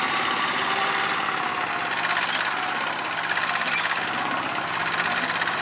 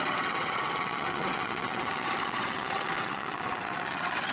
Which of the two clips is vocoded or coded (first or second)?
second